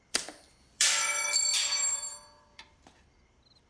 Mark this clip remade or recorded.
remade